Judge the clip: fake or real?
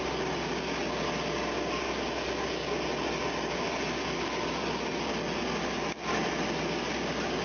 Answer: real